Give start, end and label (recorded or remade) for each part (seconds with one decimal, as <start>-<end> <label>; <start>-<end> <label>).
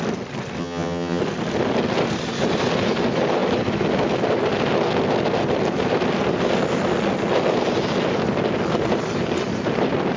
0.0-0.6 recorded; 0.6-1.2 remade; 1.2-10.2 recorded